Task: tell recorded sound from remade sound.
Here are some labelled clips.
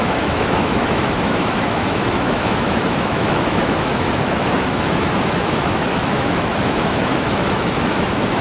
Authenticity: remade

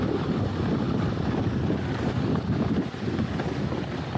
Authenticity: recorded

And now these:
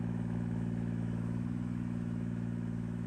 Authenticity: remade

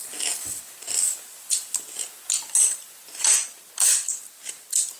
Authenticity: recorded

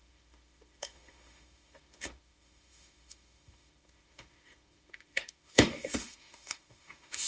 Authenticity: remade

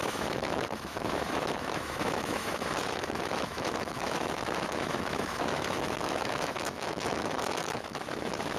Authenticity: remade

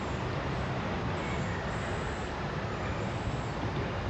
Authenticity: recorded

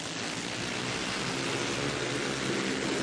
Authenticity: recorded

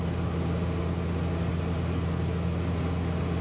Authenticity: recorded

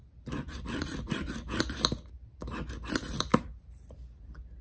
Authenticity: recorded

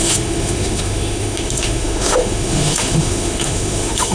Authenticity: remade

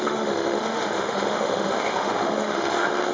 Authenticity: remade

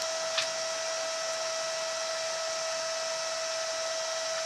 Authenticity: recorded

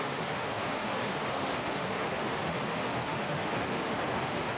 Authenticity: remade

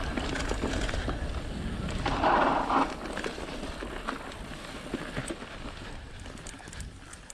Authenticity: recorded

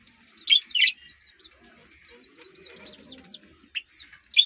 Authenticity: recorded